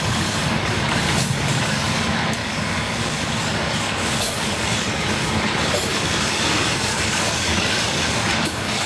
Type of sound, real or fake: fake